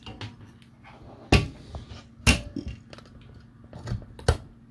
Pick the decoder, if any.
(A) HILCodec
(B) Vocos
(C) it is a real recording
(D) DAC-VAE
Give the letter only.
C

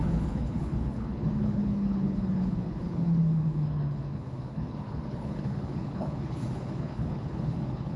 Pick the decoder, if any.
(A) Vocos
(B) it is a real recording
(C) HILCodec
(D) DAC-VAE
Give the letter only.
C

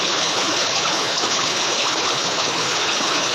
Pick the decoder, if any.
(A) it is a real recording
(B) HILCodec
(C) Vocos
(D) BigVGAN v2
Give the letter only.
B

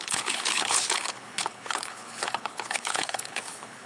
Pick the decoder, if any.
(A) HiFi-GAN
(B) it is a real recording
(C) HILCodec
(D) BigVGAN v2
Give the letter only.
C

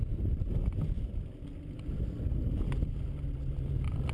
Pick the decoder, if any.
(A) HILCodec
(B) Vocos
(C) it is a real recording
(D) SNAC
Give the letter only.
C